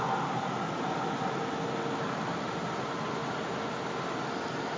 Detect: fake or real real